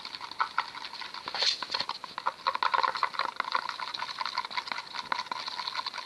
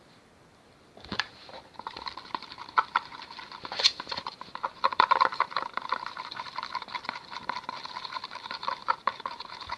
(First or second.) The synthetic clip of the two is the second